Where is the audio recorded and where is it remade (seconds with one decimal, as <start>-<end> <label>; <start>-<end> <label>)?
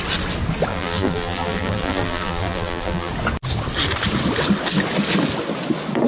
0.0-0.7 recorded; 0.7-3.1 remade; 3.1-6.1 recorded